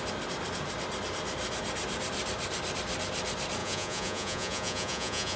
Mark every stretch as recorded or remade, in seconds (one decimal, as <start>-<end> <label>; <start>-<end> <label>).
0.0-3.6 recorded; 3.6-5.4 remade